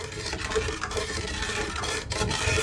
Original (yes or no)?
yes